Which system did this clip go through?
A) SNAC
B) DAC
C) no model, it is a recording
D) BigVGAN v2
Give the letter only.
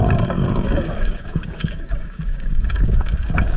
B